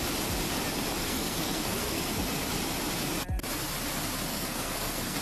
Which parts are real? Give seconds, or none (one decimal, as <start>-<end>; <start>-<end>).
0.0-1.0; 2.1-4.3